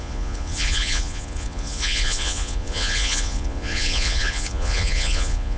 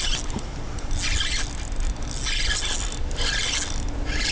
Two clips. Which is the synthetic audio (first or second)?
first